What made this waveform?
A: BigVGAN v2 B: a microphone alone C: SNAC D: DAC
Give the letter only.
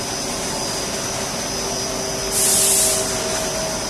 B